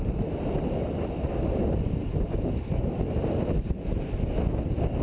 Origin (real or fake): real